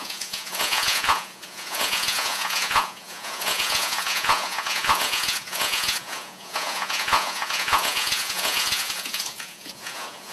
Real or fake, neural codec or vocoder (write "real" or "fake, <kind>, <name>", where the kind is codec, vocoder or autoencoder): fake, vocoder, Vocos